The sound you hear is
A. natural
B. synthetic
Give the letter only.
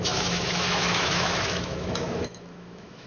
B